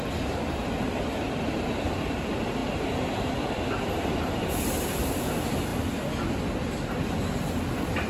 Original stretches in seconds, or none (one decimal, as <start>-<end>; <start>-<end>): 0.0-8.1

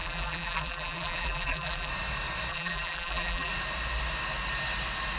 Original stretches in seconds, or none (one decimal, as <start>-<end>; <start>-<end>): 1.9-2.5; 3.5-5.2

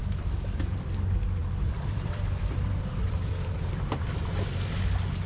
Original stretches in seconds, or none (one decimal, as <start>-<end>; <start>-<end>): 0.7-1.4; 4.1-5.3

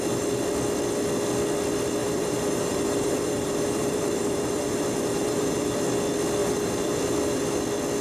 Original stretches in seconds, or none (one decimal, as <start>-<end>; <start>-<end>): 0.0-2.0; 5.8-6.4; 7.0-8.0

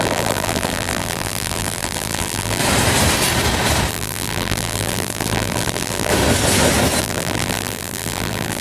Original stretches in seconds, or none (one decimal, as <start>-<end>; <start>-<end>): 2.6-3.9; 6.1-7.0